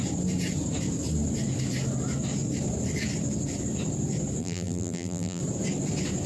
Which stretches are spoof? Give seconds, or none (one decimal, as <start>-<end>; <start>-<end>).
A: 4.4-5.4